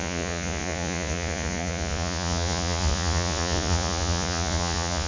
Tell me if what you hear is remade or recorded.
remade